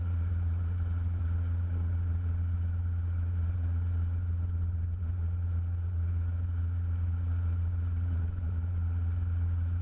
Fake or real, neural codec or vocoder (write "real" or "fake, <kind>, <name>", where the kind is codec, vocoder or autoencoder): fake, vocoder, Vocos